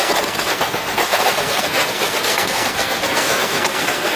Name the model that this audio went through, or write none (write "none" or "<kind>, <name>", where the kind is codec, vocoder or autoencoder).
codec, SNAC